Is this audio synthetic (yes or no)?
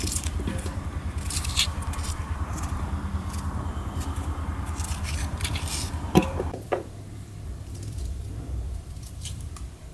yes